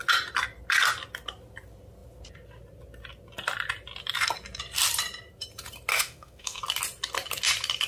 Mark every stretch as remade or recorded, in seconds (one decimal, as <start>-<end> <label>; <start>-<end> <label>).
0.0-5.9 recorded; 5.9-6.6 remade; 6.6-7.9 recorded